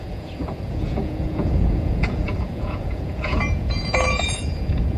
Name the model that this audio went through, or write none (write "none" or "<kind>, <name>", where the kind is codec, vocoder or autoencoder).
vocoder, Vocos